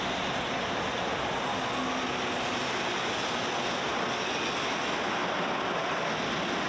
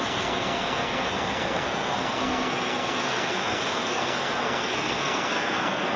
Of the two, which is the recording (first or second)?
first